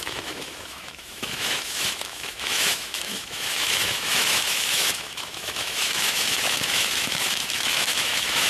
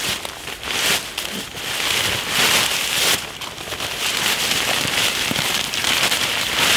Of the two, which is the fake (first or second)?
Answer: first